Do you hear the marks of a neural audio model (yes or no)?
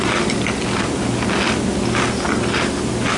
no